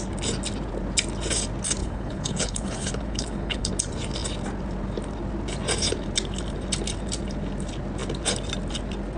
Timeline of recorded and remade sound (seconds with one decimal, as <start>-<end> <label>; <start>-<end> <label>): 0.0-1.8 recorded; 1.8-3.7 remade; 3.7-9.2 recorded

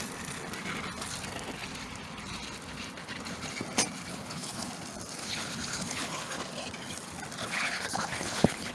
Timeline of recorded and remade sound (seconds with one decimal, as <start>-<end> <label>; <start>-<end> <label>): 0.0-4.1 recorded; 4.1-4.7 remade; 4.7-5.2 recorded; 5.2-6.4 remade; 6.4-7.4 recorded; 7.4-8.7 remade

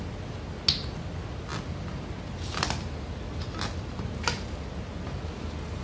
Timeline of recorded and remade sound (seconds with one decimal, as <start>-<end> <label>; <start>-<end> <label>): 0.0-5.8 recorded

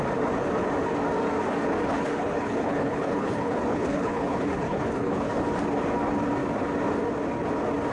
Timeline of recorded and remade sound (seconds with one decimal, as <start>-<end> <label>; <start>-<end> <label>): 0.0-1.8 recorded; 1.8-5.3 remade; 5.3-7.9 recorded

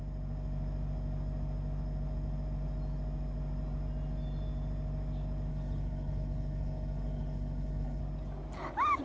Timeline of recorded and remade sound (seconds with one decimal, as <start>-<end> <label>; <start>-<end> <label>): 0.0-5.5 recorded; 5.5-8.0 remade; 8.0-9.0 recorded

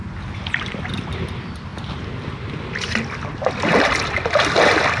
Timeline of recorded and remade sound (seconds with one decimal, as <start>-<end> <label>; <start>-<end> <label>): 0.0-5.0 recorded